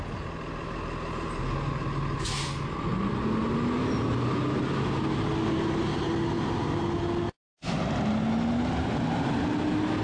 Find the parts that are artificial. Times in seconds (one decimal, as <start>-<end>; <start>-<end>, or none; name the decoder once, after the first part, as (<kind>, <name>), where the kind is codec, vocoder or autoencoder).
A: none